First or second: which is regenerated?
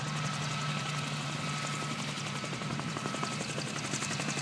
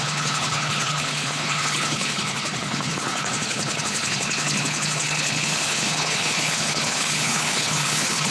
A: second